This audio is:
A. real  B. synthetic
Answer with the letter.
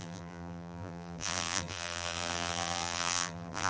B